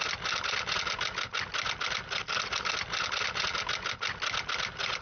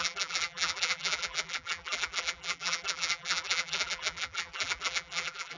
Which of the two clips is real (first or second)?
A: first